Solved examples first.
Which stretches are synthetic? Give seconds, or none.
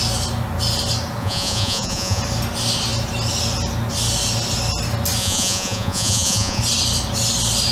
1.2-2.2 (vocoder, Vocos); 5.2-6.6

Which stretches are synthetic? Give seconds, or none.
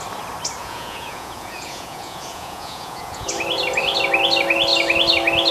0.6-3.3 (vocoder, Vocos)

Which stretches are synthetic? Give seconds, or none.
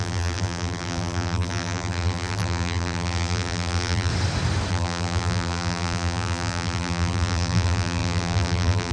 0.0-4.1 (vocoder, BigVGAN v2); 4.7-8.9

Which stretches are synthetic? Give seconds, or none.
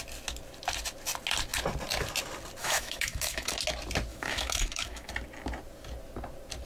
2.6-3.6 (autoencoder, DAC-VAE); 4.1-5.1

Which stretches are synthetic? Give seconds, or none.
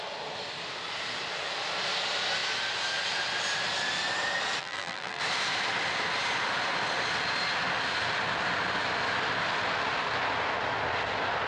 4.6-5.2 (vocoder, BigVGAN v2)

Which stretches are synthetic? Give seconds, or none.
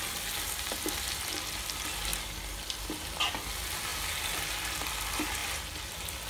none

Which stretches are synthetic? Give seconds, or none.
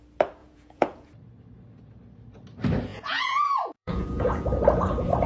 0.4-1.1 (vocoder, Vocos); 2.9-4.6